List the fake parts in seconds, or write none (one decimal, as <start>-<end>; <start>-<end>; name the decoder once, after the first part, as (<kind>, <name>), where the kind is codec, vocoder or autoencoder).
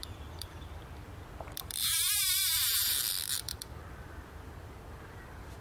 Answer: 0.0-5.6 (vocoder, BigVGAN v2)